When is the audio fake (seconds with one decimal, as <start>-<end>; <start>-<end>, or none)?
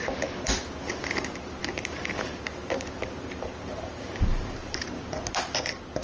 1.6-5.2